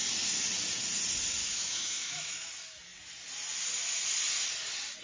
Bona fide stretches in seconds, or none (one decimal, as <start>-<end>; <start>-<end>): 0.0-1.4; 2.5-5.0